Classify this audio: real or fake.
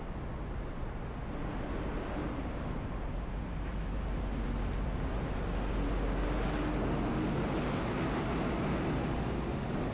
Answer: real